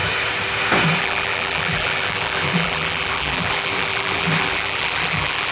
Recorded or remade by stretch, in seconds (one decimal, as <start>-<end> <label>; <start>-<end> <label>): 0.0-1.0 recorded; 1.0-5.5 remade